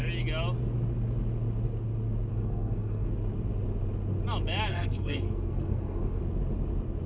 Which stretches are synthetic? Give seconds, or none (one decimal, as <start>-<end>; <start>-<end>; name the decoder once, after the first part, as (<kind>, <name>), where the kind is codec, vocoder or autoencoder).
2.3-3.1 (codec, SNAC); 4.7-6.2